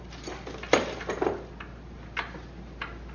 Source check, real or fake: real